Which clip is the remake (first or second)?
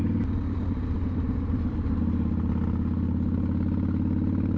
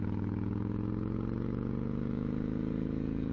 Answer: second